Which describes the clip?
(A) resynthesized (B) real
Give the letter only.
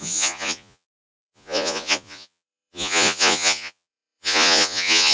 A